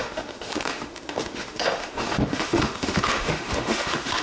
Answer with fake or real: fake